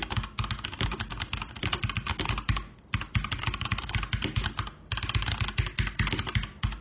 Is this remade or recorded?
recorded